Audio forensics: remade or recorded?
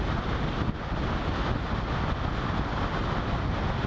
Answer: recorded